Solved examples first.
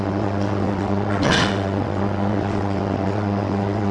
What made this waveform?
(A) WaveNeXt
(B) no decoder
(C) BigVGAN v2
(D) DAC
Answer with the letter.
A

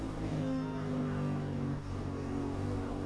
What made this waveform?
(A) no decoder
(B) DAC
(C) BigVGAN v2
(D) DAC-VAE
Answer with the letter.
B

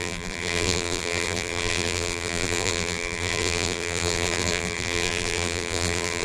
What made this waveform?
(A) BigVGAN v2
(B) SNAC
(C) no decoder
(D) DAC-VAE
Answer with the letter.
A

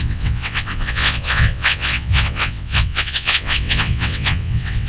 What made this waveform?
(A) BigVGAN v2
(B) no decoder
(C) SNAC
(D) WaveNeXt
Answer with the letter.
D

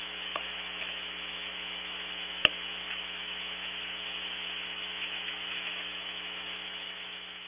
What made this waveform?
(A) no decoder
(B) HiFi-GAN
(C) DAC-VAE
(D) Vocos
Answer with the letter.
C